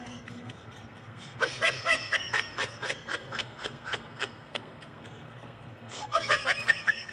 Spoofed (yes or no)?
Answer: yes